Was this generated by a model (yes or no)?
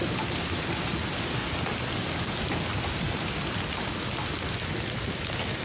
no